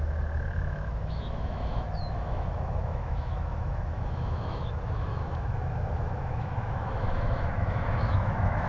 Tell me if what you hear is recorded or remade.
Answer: remade